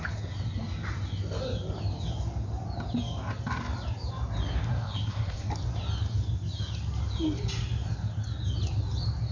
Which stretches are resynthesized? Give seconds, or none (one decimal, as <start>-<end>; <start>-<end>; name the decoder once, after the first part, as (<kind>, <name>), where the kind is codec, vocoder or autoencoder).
4.7-5.5 (codec, SNAC)